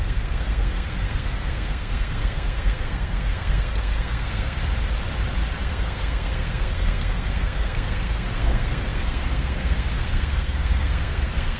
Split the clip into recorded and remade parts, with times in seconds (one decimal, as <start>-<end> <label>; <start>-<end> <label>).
0.0-4.6 remade; 4.6-5.6 recorded; 5.6-11.6 remade